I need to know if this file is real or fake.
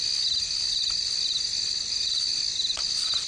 real